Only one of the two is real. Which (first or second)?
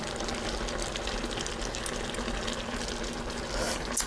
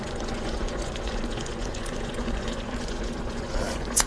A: first